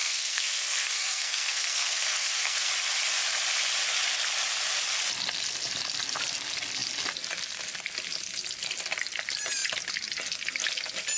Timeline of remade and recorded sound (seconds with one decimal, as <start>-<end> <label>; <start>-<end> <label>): 0.0-2.7 remade; 2.7-11.2 recorded